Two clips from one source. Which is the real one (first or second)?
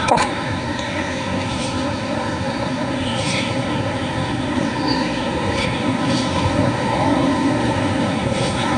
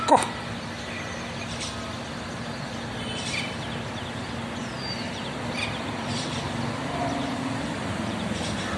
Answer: second